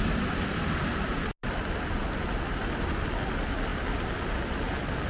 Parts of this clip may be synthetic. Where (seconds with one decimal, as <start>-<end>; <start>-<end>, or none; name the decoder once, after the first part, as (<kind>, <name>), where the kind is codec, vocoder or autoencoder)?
3.7-4.3 (vocoder, BigVGAN v2)